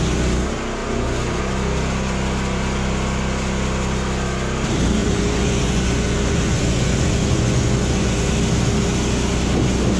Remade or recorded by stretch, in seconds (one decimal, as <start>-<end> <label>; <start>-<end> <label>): 0.0-0.8 recorded; 0.8-1.4 remade; 1.4-5.0 recorded; 5.0-8.3 remade; 8.3-10.0 recorded